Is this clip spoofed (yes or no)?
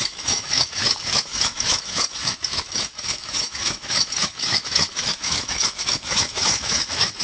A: yes